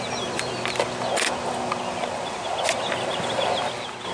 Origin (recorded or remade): recorded